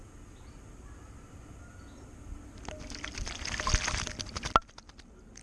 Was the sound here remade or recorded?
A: recorded